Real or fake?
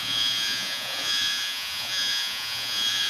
fake